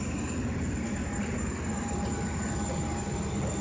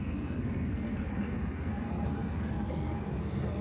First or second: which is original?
first